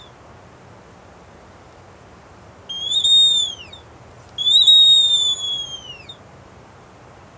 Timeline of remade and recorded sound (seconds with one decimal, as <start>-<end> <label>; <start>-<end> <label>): 0.0-4.7 recorded; 4.7-6.7 remade; 6.7-7.4 recorded